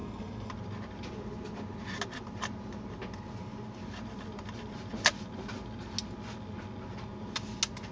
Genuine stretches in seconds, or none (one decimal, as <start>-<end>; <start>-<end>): 0.5-7.9